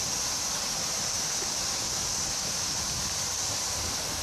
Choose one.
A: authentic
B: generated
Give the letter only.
A